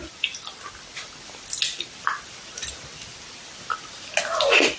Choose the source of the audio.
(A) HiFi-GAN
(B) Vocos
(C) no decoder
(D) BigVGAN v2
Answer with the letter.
C